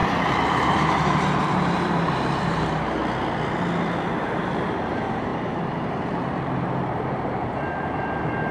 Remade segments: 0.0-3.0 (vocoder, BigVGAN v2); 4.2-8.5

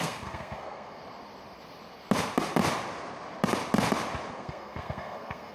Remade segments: 0.0-1.0 (codec, SNAC); 4.3-5.5

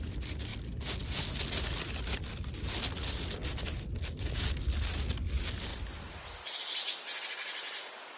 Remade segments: none

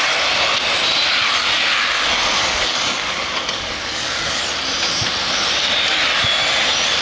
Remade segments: 2.4-4.4 (codec, DAC)